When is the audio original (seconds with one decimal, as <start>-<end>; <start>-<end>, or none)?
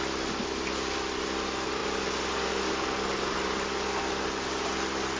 0.0-5.2